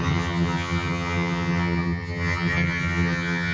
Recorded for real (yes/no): no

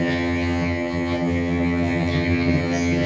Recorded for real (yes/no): no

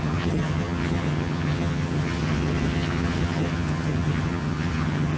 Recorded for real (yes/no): no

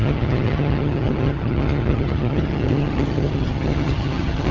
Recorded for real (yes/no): no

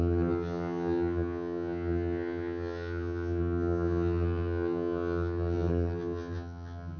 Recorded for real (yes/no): no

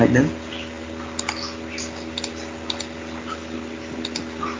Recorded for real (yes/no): yes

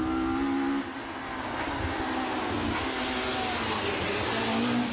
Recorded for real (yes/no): yes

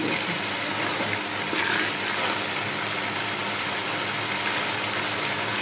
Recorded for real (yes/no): yes